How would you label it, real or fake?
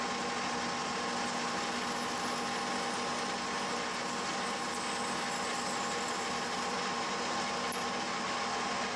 real